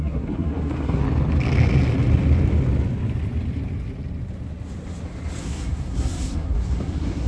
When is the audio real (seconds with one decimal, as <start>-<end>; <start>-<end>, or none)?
1.0-5.4